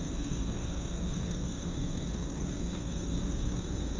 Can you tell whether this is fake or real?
fake